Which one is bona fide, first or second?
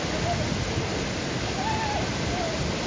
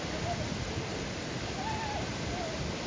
first